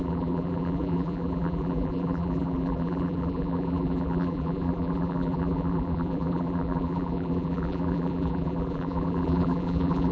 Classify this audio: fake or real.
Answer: fake